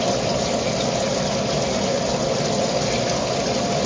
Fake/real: real